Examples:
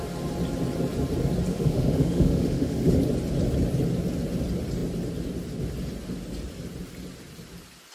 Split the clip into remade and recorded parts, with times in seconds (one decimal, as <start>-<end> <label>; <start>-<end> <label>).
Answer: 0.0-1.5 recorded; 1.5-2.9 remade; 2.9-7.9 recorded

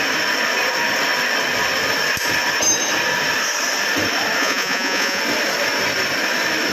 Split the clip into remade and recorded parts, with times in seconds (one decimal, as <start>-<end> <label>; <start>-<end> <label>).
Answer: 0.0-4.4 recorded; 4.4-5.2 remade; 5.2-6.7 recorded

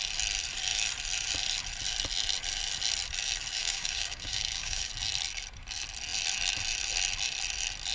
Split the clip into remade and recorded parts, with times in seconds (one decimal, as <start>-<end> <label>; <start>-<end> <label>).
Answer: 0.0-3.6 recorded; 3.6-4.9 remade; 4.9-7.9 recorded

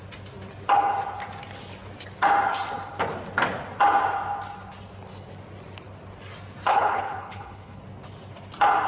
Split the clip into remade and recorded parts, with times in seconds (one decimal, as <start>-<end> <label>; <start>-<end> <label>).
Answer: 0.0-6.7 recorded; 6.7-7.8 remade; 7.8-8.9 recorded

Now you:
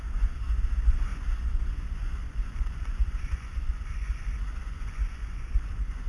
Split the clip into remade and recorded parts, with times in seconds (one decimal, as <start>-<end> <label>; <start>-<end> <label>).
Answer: 0.0-6.1 remade

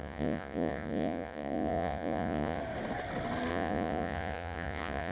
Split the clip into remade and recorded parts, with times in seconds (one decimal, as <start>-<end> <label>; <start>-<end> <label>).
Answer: 0.0-2.6 remade; 2.6-3.5 recorded; 3.5-5.1 remade